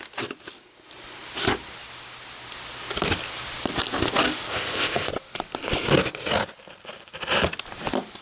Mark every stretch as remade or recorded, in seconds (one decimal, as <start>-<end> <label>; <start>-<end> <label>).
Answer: 0.0-4.5 recorded; 4.5-5.1 remade; 5.1-8.2 recorded